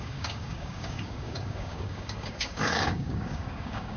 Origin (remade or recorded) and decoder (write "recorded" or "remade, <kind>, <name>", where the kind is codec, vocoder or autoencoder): remade, codec, DAC